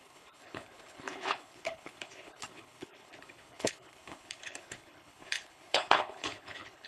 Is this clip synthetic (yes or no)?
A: yes